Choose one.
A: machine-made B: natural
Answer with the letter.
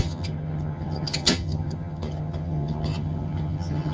A